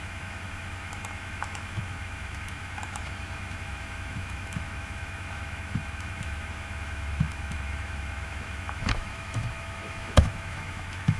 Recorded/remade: remade